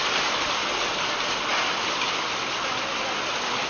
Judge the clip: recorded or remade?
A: recorded